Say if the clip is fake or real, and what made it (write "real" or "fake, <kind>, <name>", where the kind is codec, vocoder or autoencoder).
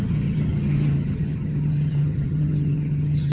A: fake, vocoder, HiFi-GAN